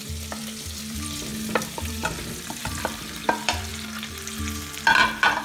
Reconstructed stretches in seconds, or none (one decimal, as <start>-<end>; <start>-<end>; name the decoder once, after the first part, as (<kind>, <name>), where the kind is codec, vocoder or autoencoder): 0.0-1.3 (vocoder, BigVGAN v2); 2.6-3.7; 4.9-5.4